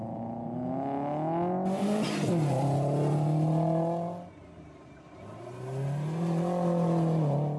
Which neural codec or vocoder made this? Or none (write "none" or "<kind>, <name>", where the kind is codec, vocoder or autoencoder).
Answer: none